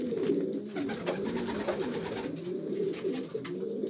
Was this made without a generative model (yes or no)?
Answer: yes